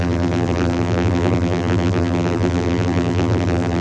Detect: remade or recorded remade